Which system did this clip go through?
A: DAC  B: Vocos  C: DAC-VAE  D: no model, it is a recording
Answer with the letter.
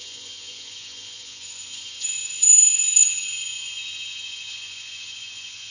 B